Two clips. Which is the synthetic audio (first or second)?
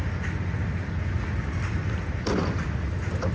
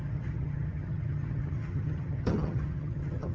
second